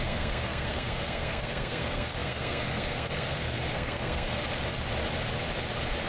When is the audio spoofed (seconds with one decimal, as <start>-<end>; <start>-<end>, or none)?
0.0-4.4